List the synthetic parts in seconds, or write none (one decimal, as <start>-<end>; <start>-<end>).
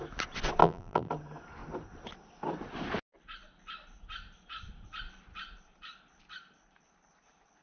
0.6-1.1